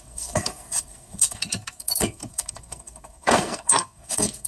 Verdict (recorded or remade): remade